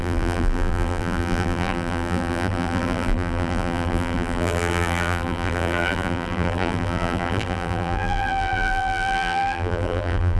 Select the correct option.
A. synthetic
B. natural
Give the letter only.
A